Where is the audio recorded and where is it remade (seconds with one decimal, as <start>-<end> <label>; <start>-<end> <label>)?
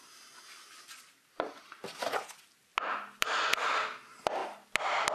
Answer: 0.0-5.1 recorded